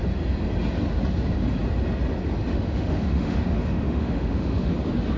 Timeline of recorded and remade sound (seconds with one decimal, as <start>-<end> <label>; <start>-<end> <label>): 0.0-2.5 recorded; 2.5-4.7 remade; 4.7-5.2 recorded